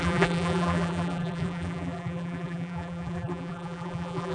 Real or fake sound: fake